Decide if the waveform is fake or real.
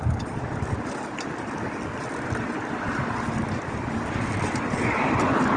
real